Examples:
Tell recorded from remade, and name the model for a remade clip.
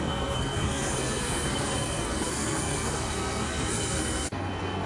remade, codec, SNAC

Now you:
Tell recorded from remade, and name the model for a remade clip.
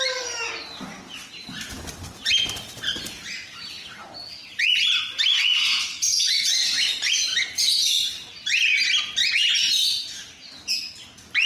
recorded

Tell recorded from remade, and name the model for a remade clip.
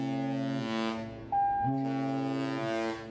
recorded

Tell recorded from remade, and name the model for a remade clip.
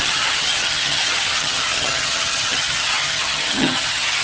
remade, vocoder, HiFi-GAN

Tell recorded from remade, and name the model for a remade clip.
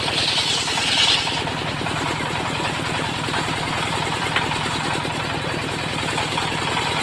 remade, vocoder, BigVGAN v2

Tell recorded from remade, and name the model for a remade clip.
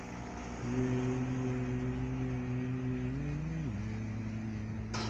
recorded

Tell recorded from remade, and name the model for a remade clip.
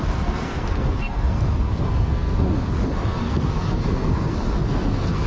remade, codec, SNAC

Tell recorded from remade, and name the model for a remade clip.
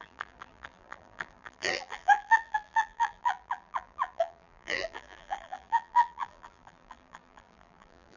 remade, vocoder, BigVGAN v2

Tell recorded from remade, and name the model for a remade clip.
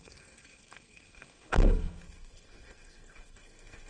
remade, codec, SNAC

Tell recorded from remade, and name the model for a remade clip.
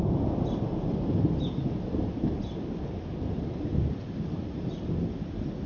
recorded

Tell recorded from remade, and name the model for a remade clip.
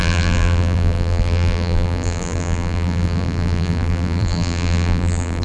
remade, vocoder, BigVGAN v2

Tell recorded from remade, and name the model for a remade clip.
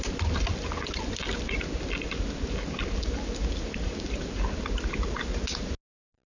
recorded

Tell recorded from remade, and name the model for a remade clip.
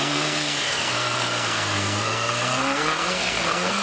remade, codec, SNAC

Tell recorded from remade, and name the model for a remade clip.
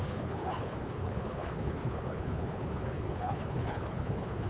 remade, codec, HILCodec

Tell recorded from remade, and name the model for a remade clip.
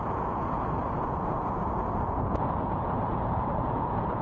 remade, vocoder, Vocos